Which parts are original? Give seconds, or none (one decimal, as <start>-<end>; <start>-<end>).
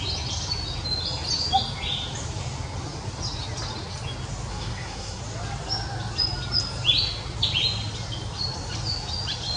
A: 0.0-4.5; 5.2-9.6